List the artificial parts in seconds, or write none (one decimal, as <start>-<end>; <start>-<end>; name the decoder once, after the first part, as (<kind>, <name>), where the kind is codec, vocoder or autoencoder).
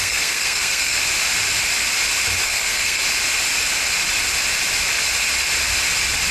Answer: 0.0-1.0 (codec, SNAC); 2.4-3.0